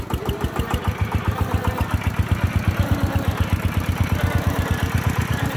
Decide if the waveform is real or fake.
real